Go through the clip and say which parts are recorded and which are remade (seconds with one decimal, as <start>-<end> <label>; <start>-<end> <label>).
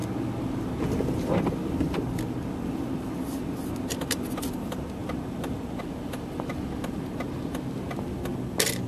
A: 0.0-8.9 recorded